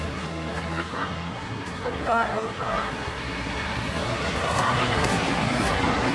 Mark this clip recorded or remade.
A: remade